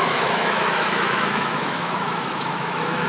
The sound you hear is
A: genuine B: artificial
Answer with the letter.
B